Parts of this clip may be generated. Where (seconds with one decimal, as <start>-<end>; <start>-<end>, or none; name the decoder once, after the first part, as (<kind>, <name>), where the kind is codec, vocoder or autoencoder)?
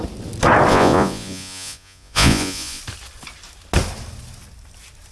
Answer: 0.7-2.8 (vocoder, Vocos)